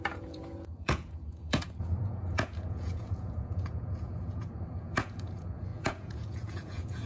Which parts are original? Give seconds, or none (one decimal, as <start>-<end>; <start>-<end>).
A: none